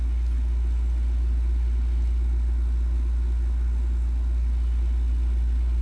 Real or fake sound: real